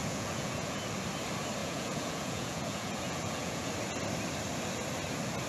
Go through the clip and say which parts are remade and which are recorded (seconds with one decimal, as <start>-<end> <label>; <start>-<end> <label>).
0.0-0.8 remade; 0.8-1.6 recorded; 1.6-3.7 remade; 3.7-5.5 recorded